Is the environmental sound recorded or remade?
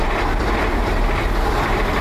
recorded